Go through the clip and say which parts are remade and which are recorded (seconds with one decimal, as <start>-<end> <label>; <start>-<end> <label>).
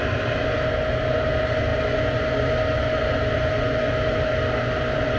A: 0.0-5.2 recorded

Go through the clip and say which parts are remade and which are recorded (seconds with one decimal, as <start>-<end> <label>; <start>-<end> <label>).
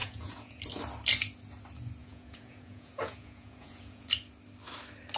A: 0.0-0.6 remade; 0.6-2.0 recorded; 2.0-4.1 remade; 4.1-5.2 recorded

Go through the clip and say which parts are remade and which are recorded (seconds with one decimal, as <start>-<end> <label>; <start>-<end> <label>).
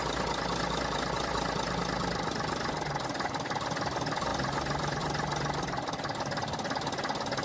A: 0.0-7.4 recorded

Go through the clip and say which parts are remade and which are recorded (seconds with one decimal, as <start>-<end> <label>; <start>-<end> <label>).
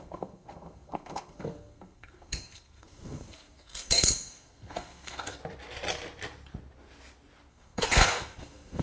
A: 0.0-5.4 remade; 5.4-7.5 recorded; 7.5-8.8 remade